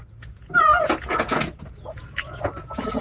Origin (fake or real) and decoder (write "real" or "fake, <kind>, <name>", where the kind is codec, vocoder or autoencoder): fake, vocoder, Vocos